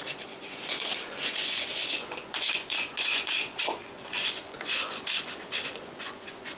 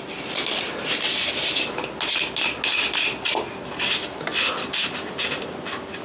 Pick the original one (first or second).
second